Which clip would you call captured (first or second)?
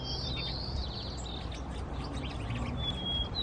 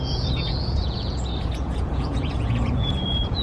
first